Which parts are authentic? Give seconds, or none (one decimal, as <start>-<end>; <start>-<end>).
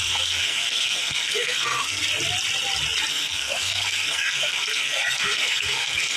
2.0-3.1